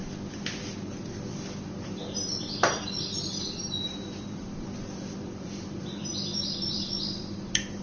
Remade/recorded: remade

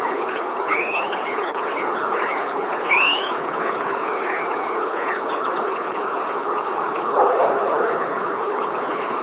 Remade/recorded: remade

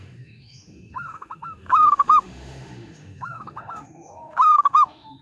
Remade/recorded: remade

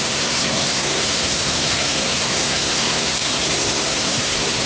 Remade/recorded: remade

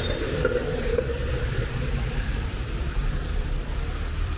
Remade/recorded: remade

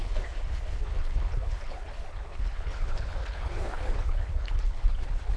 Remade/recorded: remade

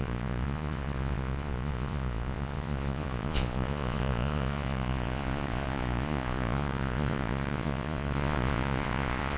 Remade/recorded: remade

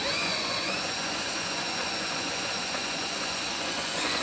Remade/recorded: remade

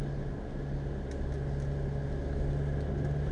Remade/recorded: recorded